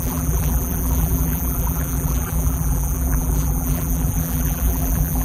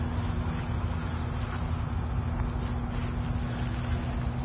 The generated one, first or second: first